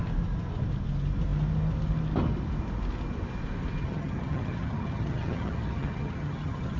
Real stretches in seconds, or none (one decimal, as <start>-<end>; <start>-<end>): 0.0-3.8

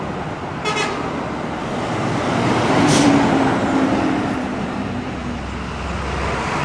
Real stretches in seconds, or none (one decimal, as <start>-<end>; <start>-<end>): 0.0-1.6; 5.4-6.6